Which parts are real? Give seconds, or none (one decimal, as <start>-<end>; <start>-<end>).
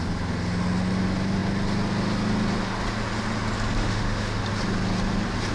0.0-3.8; 4.4-5.5